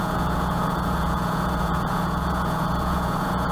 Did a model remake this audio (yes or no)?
yes